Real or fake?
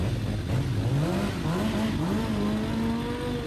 real